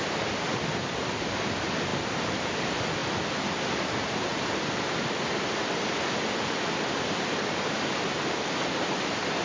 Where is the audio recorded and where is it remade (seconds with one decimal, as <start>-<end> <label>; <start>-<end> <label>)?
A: 0.0-1.9 remade; 1.9-2.5 recorded; 2.5-3.0 remade; 3.0-3.7 recorded; 3.7-9.4 remade